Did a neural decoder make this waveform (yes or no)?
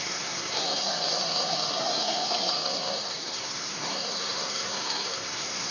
yes